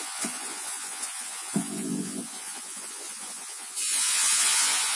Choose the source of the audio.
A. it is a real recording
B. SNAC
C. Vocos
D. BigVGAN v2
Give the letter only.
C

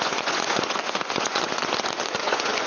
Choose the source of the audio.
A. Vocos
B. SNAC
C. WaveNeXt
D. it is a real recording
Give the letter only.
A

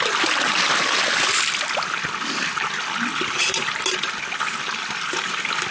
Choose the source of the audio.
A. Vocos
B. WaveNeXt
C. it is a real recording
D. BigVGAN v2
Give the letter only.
C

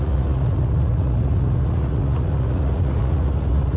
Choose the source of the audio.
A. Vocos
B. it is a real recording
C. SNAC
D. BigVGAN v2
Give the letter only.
A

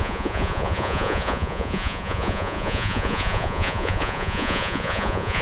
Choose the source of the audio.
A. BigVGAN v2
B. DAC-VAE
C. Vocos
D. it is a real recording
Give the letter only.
C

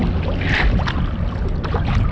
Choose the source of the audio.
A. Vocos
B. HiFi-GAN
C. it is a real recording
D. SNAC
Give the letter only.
C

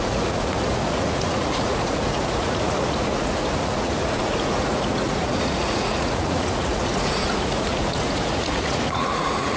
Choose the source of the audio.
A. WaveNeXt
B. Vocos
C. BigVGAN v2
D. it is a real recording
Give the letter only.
B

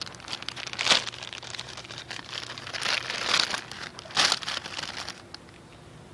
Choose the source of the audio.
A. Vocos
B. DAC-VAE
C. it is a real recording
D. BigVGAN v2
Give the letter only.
C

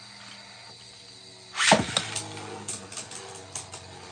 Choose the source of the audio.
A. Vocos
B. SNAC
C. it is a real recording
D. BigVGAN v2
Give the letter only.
C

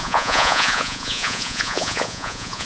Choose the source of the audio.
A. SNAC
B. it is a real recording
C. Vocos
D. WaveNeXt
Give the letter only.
C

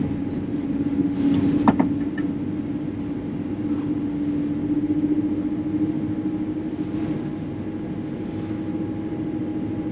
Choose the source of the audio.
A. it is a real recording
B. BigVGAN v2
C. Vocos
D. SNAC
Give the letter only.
A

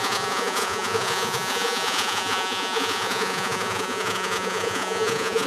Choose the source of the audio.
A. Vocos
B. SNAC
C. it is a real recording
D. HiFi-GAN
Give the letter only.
A